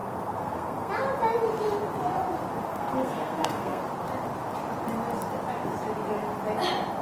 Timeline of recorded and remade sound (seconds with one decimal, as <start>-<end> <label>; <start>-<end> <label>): 0.0-0.9 remade; 0.9-2.7 recorded; 2.7-3.8 remade; 3.8-7.0 recorded